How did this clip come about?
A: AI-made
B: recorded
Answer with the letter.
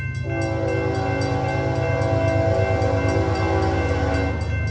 B